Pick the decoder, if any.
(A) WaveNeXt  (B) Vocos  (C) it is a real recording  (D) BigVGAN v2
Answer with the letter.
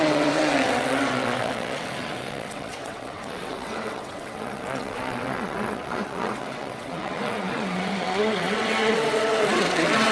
A